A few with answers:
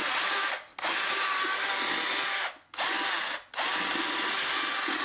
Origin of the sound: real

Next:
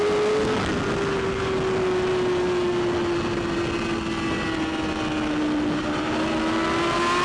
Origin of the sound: real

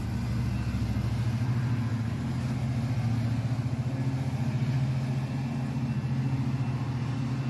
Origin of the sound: real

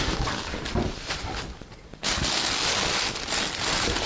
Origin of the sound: real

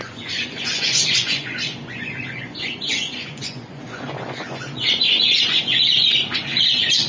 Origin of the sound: fake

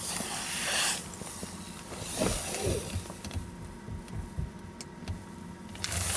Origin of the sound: real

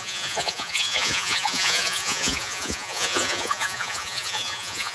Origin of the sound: fake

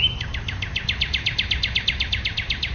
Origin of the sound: real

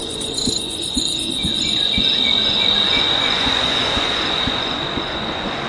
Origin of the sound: fake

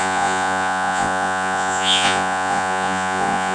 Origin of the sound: fake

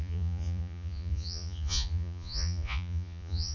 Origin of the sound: fake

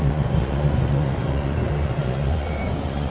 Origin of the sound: fake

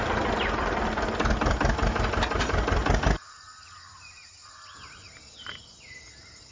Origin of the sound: real